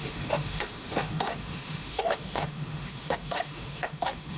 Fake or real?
fake